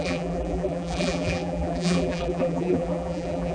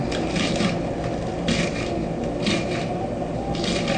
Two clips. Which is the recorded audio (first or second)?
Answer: second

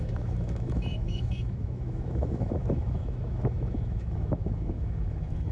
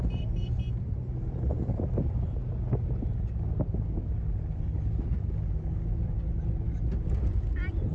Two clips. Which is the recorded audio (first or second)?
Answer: second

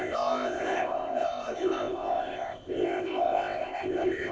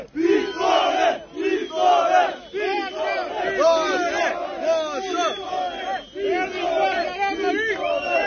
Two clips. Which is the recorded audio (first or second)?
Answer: second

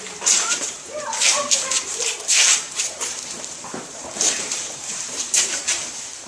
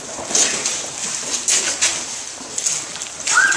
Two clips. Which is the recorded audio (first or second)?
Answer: second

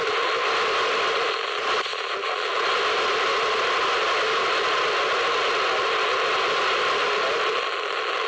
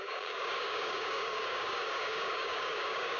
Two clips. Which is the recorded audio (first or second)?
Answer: first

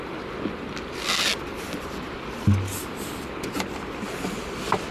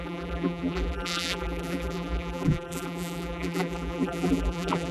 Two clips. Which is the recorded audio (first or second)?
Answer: first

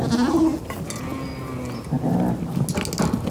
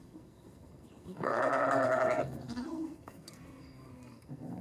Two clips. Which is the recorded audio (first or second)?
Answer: first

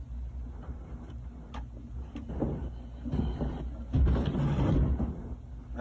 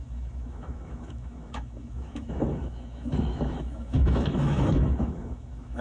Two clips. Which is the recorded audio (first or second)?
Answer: first